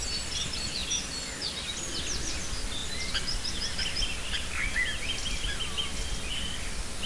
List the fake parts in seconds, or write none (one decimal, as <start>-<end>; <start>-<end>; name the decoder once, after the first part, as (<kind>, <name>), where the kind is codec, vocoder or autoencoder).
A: none